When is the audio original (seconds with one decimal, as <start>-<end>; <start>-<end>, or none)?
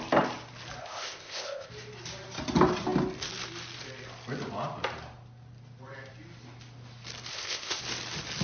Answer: 0.0-0.8; 1.7-7.3; 7.8-8.4